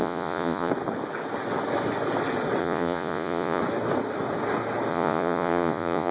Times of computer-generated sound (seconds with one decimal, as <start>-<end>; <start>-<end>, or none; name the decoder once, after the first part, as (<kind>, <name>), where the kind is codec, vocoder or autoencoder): 0.0-0.7 (vocoder, Vocos); 2.6-3.6; 4.9-6.1